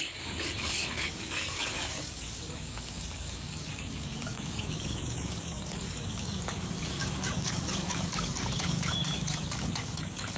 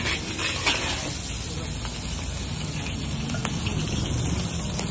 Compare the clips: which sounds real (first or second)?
second